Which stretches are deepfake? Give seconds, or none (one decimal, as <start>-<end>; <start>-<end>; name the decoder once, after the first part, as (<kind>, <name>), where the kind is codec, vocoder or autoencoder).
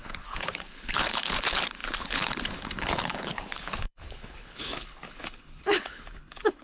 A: 0.0-6.6 (codec, HILCodec)